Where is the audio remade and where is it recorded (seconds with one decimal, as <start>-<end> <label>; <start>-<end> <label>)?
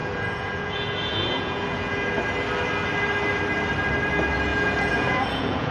0.0-2.1 remade; 2.1-4.5 recorded; 4.5-5.7 remade